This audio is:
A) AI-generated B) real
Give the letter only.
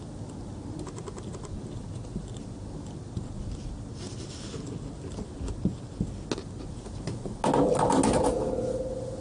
B